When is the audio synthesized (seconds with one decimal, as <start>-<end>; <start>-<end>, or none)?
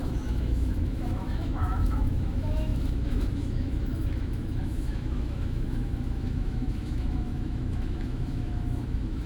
0.0-9.3